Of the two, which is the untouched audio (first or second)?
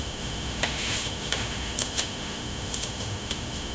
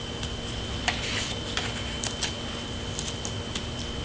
second